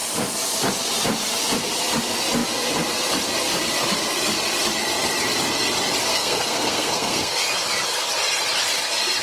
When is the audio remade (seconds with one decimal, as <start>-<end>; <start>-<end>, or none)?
6.1-7.4